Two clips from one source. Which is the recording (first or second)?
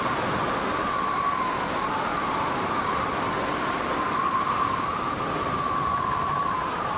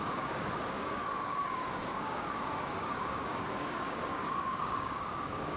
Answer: first